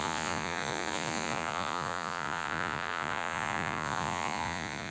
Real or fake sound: fake